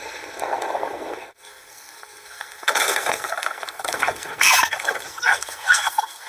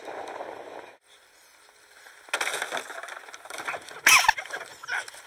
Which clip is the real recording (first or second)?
second